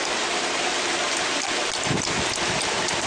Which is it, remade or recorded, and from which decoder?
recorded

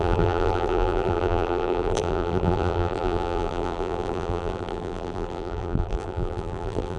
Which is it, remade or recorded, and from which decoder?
remade, vocoder, BigVGAN v2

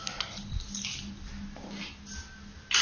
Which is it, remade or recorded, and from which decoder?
recorded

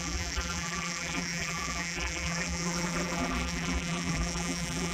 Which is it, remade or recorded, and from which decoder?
remade, vocoder, BigVGAN v2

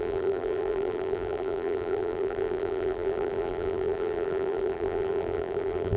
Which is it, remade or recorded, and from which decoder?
remade, vocoder, BigVGAN v2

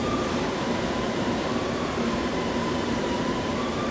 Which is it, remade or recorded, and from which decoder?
remade, vocoder, BigVGAN v2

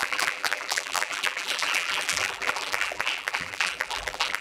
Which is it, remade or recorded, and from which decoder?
remade, vocoder, BigVGAN v2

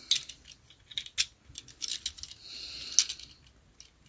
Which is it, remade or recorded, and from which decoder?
recorded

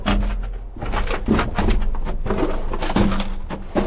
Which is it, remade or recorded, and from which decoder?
recorded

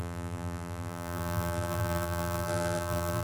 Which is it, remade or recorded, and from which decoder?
remade, vocoder, BigVGAN v2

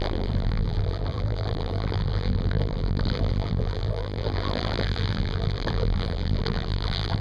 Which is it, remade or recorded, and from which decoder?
remade, vocoder, BigVGAN v2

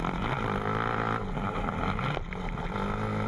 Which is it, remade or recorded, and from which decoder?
recorded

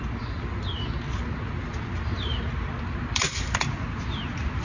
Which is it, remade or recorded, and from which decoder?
recorded